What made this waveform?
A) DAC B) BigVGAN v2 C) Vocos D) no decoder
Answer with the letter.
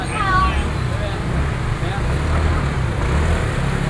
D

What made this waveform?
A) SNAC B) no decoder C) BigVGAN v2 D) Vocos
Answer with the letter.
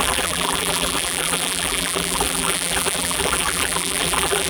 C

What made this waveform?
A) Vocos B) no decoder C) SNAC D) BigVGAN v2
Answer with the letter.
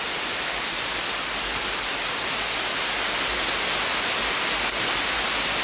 B